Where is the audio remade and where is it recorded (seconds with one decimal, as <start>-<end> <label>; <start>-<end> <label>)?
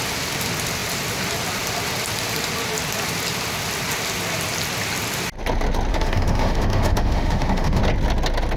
0.0-5.9 recorded; 5.9-7.8 remade; 7.8-8.6 recorded